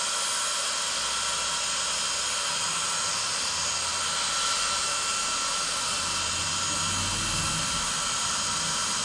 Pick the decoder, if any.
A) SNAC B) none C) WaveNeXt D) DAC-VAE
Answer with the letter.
B